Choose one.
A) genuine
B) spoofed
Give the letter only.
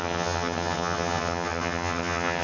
B